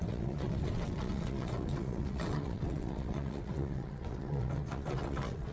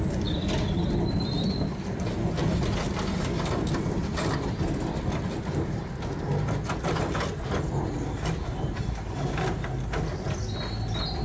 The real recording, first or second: second